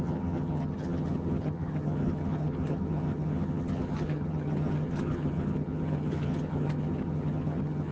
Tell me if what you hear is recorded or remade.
remade